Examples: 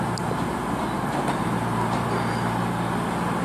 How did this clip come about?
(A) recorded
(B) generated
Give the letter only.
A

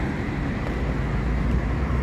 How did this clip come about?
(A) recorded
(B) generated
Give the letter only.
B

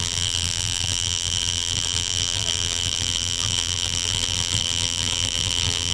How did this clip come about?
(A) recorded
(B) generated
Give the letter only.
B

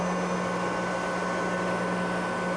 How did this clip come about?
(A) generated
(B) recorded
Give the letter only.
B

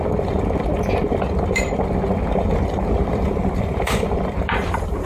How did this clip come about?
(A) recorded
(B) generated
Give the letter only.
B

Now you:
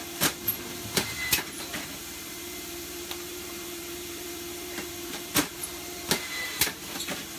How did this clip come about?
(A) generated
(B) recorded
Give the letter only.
A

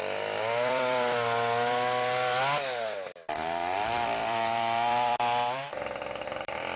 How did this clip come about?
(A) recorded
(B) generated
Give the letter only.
B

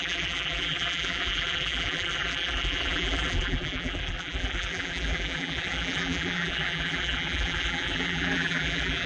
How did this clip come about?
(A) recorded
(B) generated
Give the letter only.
B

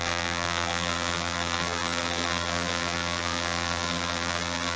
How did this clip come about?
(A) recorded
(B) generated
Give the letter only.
B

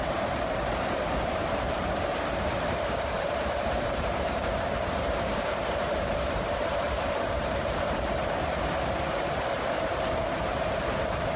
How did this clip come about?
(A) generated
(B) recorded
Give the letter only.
A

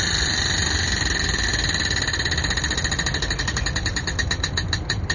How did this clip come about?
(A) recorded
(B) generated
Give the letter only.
A